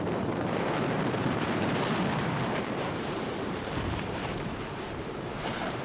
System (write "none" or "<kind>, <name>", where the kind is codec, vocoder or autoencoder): vocoder, BigVGAN v2